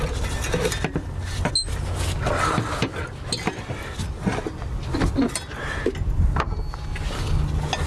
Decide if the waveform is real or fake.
real